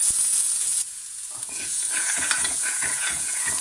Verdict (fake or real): fake